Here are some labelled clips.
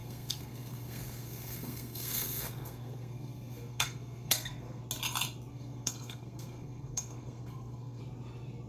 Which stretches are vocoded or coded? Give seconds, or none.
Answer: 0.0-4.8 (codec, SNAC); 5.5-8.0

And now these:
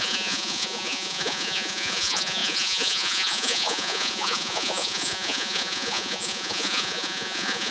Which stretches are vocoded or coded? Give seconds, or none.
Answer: 0.0-7.7 (vocoder, Vocos)

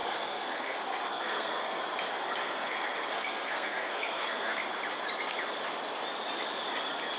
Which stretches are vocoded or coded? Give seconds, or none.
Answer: 0.0-1.8 (codec, SNAC); 2.4-4.6